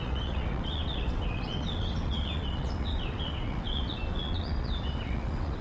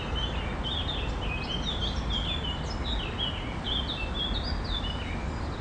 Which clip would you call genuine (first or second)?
second